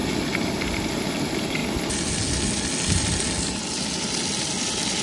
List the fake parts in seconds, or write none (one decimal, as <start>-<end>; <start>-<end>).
none